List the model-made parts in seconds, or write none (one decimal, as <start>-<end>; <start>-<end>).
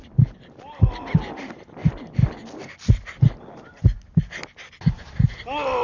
none